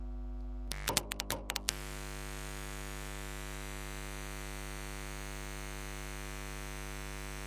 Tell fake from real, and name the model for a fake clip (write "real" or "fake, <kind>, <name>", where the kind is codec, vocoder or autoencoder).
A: real